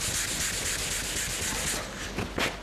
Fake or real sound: real